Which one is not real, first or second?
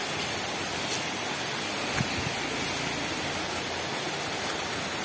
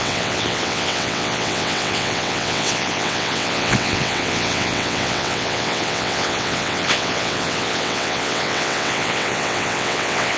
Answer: second